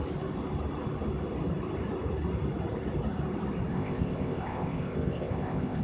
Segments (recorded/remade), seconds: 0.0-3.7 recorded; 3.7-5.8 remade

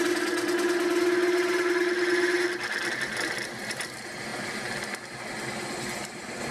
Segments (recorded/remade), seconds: 0.0-6.5 recorded

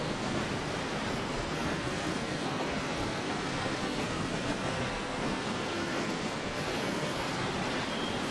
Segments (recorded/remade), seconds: 0.0-0.4 remade; 0.4-1.1 recorded; 1.1-7.5 remade; 7.5-8.3 recorded

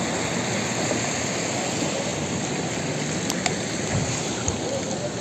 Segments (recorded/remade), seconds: 0.0-5.2 recorded

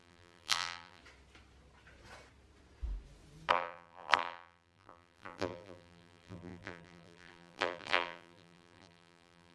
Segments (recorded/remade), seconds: 0.0-1.0 remade; 1.0-3.5 recorded; 3.5-9.5 remade

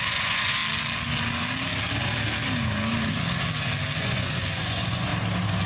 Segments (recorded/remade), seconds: 0.0-0.6 remade; 0.6-4.0 recorded; 4.0-5.1 remade; 5.1-5.7 recorded

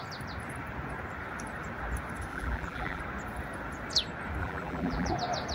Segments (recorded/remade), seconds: 0.0-2.3 recorded; 2.3-3.0 remade; 3.0-4.4 recorded; 4.4-5.1 remade; 5.1-5.5 recorded